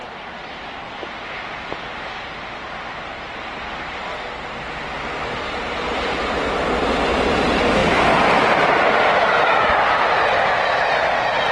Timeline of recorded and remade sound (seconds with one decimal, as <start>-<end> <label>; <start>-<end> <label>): 0.0-11.5 recorded